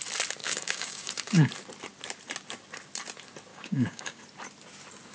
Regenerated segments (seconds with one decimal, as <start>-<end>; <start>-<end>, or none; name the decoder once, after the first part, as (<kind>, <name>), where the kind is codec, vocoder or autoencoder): 0.4-1.1 (codec, DAC); 3.5-4.2